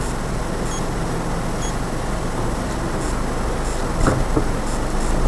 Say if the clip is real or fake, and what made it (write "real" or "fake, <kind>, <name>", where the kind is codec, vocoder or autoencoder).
real